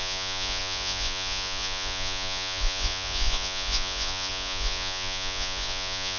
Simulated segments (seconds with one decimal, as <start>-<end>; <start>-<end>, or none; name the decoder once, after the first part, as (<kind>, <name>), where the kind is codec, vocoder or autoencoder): 0.0-6.2 (vocoder, Vocos)